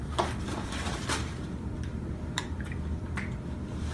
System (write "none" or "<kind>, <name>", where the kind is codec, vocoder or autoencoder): vocoder, BigVGAN v2